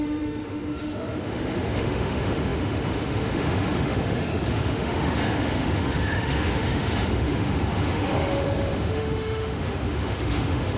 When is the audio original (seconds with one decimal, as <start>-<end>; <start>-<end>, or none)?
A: none